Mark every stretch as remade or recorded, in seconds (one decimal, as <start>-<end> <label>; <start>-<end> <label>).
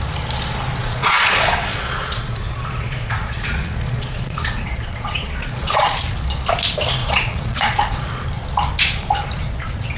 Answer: 0.0-0.8 recorded; 0.8-6.0 remade; 6.0-7.0 recorded; 7.0-8.1 remade; 8.1-10.0 recorded